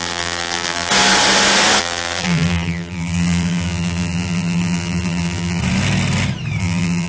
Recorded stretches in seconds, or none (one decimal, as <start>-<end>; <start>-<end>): 0.9-1.8; 5.6-6.6